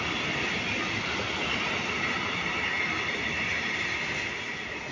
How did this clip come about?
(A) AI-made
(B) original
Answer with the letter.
B